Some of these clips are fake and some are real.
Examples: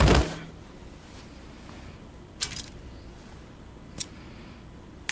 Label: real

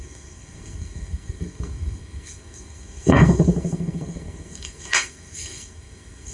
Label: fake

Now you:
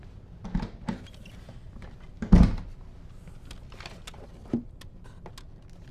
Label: real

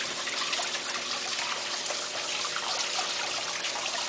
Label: real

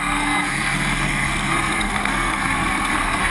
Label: fake